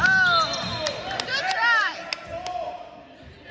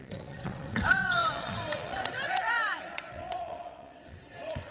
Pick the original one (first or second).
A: first